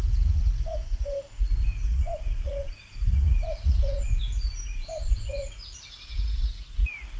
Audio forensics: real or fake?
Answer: fake